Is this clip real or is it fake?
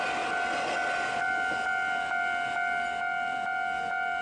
real